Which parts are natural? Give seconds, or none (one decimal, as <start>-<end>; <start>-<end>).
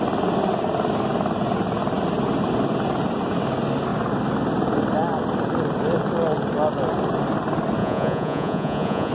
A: 0.0-7.8